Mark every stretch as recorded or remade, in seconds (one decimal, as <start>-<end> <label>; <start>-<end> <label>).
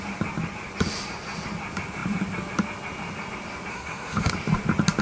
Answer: 0.0-3.7 recorded; 3.7-4.3 remade; 4.3-5.0 recorded